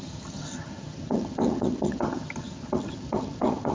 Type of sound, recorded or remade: remade